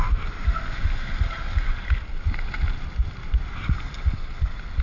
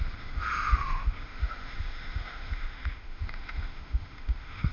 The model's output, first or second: second